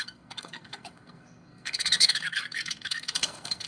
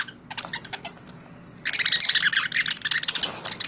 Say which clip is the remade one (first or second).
first